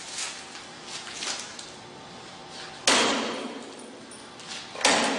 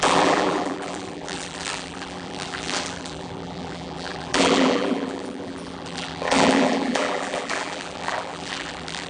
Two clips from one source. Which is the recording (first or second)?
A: first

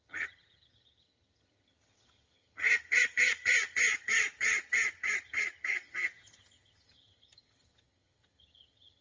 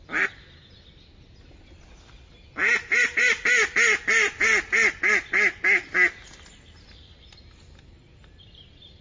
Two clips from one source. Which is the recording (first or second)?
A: second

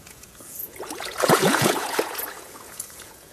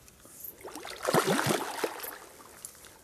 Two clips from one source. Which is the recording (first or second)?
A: second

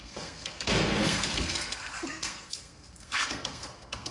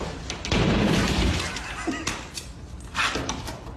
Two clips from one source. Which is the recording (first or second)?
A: second